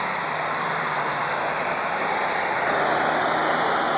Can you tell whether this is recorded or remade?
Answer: recorded